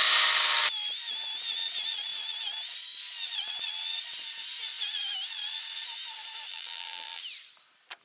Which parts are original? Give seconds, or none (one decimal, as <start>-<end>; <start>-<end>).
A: 0.0-6.5; 7.2-8.0